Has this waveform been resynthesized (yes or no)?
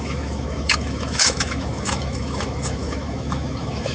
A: yes